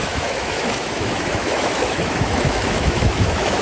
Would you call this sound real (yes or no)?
no